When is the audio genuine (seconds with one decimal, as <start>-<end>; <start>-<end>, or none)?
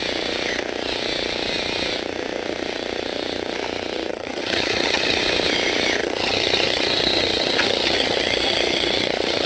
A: 0.0-4.1; 5.2-6.0